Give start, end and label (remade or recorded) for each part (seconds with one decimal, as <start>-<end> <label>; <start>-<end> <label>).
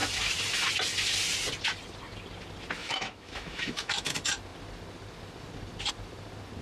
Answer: 0.0-2.8 recorded; 2.8-4.1 remade; 4.1-6.6 recorded